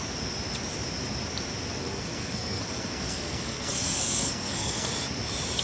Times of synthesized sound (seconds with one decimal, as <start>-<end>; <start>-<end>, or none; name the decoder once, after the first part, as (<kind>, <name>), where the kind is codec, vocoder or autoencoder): 1.8-4.9 (codec, SNAC)